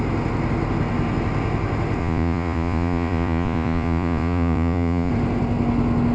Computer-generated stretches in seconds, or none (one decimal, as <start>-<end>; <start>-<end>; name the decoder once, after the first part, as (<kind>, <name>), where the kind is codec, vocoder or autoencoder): 2.0-5.1 (vocoder, Vocos)